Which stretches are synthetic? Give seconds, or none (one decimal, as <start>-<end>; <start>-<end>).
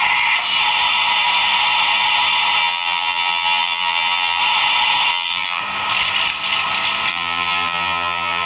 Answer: 2.6-4.4; 5.1-5.6; 7.1-8.5